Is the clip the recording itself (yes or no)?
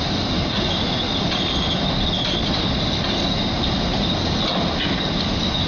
yes